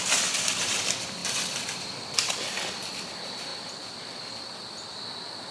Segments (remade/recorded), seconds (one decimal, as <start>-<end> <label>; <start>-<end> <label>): 0.0-5.5 remade